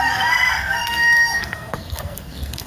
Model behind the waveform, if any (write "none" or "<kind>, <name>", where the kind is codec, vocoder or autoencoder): codec, SNAC